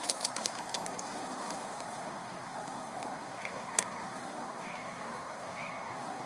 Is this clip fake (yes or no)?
yes